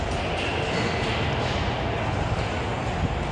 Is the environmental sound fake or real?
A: real